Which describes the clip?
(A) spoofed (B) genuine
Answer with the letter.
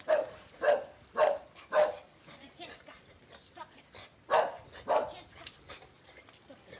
B